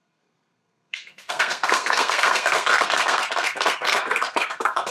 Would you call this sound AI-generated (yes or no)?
yes